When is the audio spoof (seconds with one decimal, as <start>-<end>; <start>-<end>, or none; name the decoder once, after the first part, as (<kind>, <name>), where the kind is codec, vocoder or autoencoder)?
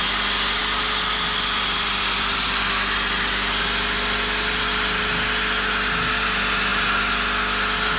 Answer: 0.6-5.0 (vocoder, BigVGAN v2)